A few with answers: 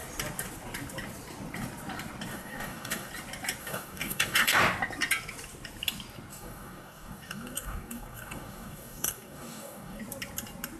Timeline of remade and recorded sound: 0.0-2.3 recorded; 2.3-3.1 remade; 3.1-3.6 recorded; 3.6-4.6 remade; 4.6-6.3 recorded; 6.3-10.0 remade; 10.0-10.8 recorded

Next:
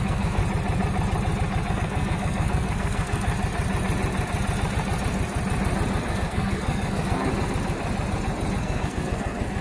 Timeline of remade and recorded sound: 0.0-0.4 remade; 0.4-1.7 recorded; 1.7-3.3 remade; 3.3-6.1 recorded; 6.1-7.3 remade; 7.3-8.6 recorded; 8.6-9.6 remade

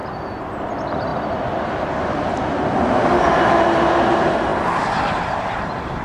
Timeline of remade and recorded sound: 0.0-6.0 recorded